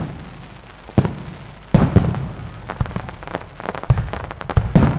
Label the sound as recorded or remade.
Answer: recorded